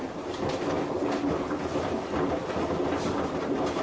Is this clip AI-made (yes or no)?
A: no